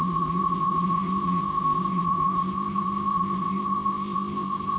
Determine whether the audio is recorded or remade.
remade